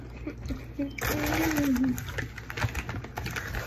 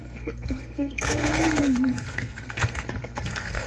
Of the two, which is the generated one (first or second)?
second